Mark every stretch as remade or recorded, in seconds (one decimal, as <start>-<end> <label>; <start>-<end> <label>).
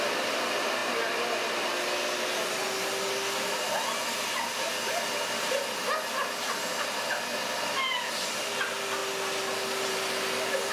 0.0-10.7 recorded